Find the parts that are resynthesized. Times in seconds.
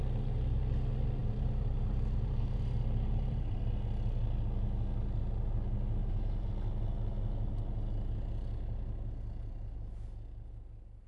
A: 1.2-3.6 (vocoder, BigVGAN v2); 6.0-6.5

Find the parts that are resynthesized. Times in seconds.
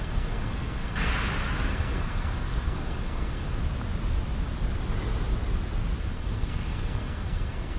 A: 0.0-1.1 (codec, SNAC); 1.7-3.6; 6.0-7.8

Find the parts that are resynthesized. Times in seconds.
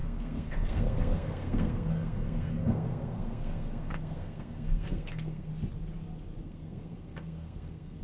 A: 0.0-5.5 (codec, SNAC); 6.4-8.0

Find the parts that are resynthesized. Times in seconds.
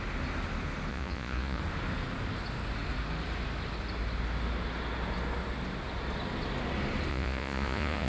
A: 0.9-1.6 (vocoder, Vocos); 7.1-8.1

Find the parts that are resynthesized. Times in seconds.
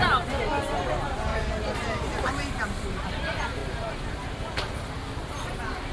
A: 1.3-2.3 (vocoder, BigVGAN v2); 3.6-4.5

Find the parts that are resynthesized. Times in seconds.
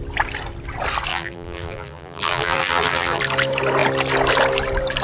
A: 1.1-3.2 (vocoder, BigVGAN v2)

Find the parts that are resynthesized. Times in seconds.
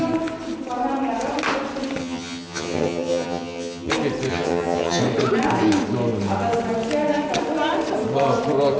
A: 2.0-3.9 (vocoder, HiFi-GAN); 4.3-5.0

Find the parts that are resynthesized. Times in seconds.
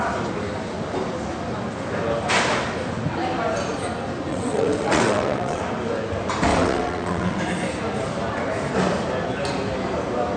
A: 4.3-5.6 (vocoder, WaveNeXt); 6.5-7.4